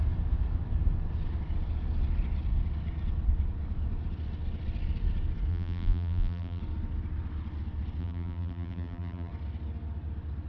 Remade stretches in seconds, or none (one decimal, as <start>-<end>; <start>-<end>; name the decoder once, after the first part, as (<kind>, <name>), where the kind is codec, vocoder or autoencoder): 5.5-6.6 (vocoder, BigVGAN v2); 8.0-9.3

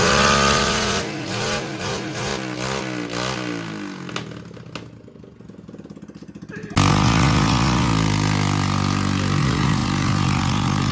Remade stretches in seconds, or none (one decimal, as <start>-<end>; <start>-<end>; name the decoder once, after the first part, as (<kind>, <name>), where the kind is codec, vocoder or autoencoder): 0.0-2.3 (vocoder, Vocos); 6.9-7.9; 9.4-10.9

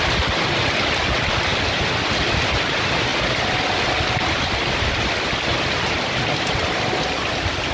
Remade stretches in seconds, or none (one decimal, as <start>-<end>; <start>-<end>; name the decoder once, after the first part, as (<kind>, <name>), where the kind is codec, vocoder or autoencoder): none

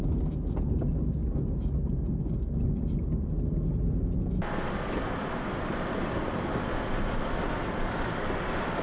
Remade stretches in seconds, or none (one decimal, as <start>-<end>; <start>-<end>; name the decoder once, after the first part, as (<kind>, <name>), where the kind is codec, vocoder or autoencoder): none

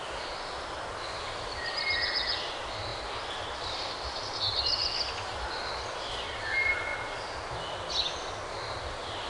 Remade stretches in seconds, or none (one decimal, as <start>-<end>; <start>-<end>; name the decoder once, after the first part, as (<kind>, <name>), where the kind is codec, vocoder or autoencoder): none

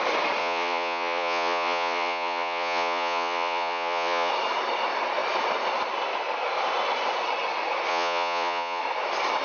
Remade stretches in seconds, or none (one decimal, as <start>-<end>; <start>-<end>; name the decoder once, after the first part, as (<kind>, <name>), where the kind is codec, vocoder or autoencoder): 0.4-4.3 (vocoder, Vocos); 7.9-8.8

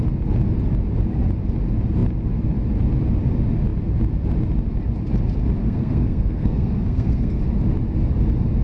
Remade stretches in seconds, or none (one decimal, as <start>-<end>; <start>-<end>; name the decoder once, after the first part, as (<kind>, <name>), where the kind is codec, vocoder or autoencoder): 5.6-7.4 (codec, SNAC)